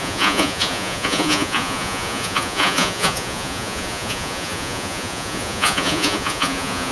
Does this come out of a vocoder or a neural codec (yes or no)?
yes